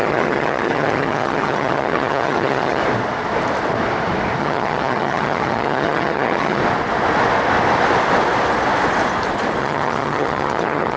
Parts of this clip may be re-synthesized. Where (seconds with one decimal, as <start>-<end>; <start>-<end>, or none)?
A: 0.0-2.8; 4.4-6.6; 9.6-11.0